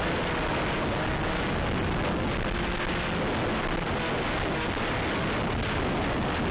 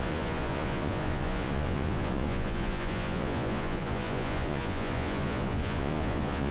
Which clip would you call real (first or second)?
first